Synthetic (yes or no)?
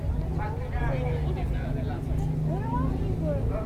no